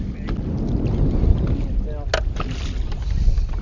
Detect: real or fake real